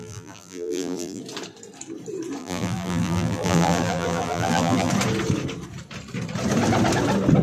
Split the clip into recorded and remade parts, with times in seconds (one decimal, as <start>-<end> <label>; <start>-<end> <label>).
0.0-1.2 remade; 1.2-2.4 recorded; 2.4-4.9 remade; 4.9-7.4 recorded